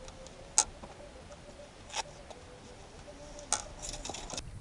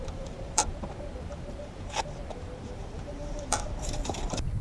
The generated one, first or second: second